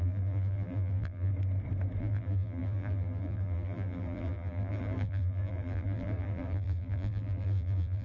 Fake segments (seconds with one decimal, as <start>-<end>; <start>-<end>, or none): 0.0-1.3; 2.0-8.0